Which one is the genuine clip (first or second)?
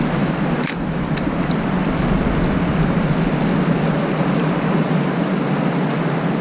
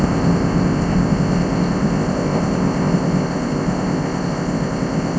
first